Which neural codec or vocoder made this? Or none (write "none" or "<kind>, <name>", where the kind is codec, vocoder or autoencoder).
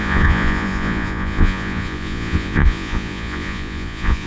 vocoder, Vocos